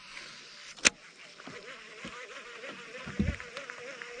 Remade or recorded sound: recorded